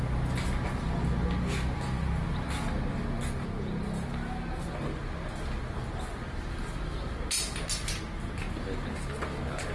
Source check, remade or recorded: recorded